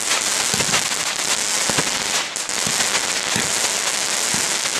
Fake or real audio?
real